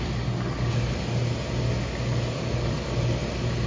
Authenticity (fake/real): real